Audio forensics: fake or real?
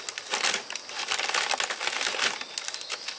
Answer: real